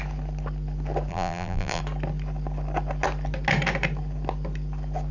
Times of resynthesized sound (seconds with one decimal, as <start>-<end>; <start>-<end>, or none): 1.1-1.8